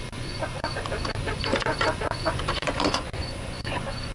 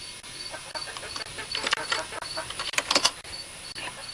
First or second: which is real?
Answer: second